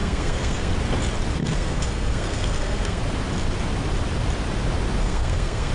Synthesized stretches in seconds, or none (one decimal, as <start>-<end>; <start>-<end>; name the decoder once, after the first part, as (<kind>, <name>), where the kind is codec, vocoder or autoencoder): 0.0-0.7 (codec, SNAC); 1.4-3.0; 5.0-5.7